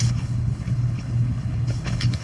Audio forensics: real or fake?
fake